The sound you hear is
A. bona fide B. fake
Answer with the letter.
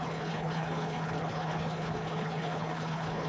B